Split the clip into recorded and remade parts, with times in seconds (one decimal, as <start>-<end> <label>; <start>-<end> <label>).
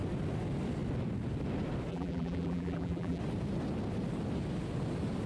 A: 0.0-1.9 recorded; 1.9-3.2 remade; 3.2-5.3 recorded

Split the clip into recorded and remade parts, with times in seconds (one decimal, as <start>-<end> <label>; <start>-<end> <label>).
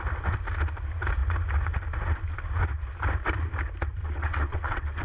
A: 0.0-4.0 recorded; 4.0-5.0 remade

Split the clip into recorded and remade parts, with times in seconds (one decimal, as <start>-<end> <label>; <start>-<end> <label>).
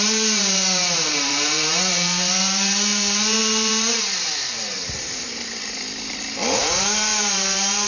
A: 0.0-7.9 remade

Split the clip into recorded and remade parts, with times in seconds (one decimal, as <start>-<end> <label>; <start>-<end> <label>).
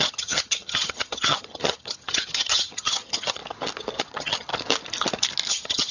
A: 0.0-3.4 remade; 3.4-4.0 recorded; 4.0-4.5 remade; 4.5-5.5 recorded; 5.5-5.9 remade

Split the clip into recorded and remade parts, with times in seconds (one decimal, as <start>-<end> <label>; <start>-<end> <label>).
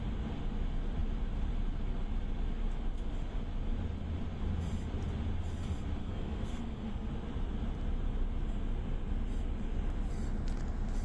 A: 0.0-6.0 recorded; 6.0-7.1 remade; 7.1-11.0 recorded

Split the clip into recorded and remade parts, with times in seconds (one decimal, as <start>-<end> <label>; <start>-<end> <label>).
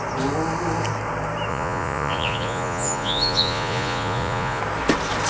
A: 0.0-1.5 recorded; 1.5-4.6 remade; 4.6-5.3 recorded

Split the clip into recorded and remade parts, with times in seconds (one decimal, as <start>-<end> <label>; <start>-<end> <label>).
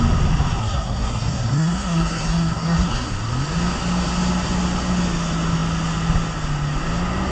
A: 0.0-0.6 recorded; 0.6-3.1 remade; 3.1-7.3 recorded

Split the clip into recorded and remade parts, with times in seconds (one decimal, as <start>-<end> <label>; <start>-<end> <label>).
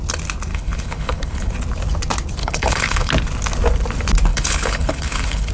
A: 0.0-0.5 recorded; 0.5-1.5 remade; 1.5-2.4 recorded; 2.4-3.1 remade; 3.1-4.3 recorded; 4.3-5.5 remade